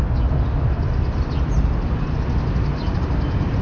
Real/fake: real